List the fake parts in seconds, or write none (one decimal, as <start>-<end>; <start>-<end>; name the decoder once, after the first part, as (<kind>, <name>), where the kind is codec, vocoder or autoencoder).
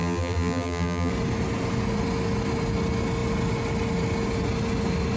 0.0-1.1 (vocoder, BigVGAN v2)